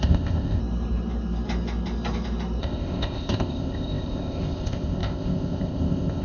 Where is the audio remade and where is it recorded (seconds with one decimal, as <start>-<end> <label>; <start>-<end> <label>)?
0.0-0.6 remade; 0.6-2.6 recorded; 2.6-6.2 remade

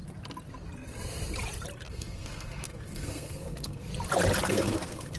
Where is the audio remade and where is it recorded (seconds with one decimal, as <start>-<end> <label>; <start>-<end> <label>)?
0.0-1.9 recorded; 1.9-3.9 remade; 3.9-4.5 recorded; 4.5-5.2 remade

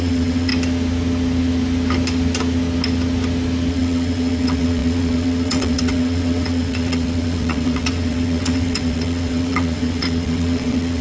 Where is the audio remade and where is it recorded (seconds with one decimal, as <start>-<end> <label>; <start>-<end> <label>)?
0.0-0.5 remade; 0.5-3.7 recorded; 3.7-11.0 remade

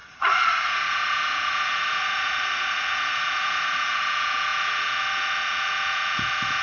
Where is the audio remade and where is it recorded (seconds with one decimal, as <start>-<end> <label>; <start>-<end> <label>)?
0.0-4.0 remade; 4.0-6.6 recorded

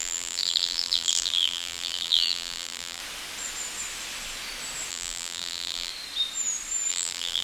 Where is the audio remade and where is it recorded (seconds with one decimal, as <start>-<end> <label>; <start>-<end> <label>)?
0.0-3.0 remade; 3.0-4.9 recorded; 4.9-5.9 remade; 5.9-6.9 recorded; 6.9-7.4 remade

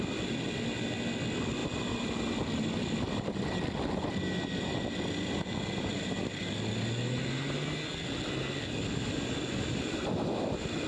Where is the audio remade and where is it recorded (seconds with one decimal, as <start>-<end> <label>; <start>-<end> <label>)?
0.0-10.9 recorded

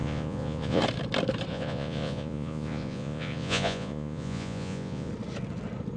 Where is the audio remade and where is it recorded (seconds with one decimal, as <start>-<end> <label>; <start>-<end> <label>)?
0.0-0.8 remade; 0.8-1.5 recorded; 1.5-5.1 remade; 5.1-6.0 recorded

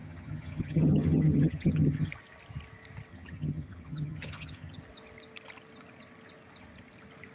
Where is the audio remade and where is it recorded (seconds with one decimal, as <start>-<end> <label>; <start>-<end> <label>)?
0.0-2.1 remade; 2.1-3.1 recorded; 3.1-4.8 remade; 4.8-7.3 recorded